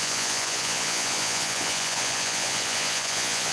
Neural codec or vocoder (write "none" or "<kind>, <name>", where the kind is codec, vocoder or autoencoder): vocoder, Vocos